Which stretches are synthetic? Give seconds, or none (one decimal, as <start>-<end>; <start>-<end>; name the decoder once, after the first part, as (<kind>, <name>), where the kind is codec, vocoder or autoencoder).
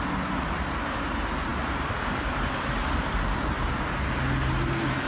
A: 1.5-3.9 (vocoder, BigVGAN v2)